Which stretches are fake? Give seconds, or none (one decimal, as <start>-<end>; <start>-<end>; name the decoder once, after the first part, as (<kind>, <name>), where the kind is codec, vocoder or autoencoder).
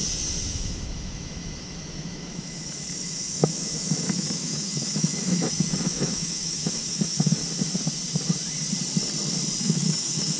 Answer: 0.5-7.4 (autoencoder, DAC-VAE); 9.6-10.4